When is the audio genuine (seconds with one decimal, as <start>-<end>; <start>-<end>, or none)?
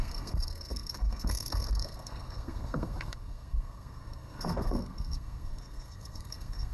none